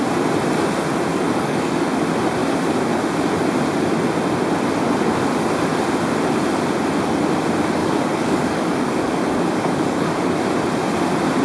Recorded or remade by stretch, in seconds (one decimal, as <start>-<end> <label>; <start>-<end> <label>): 0.0-1.1 recorded; 1.1-1.9 remade; 1.9-7.8 recorded; 7.8-10.4 remade; 10.4-11.4 recorded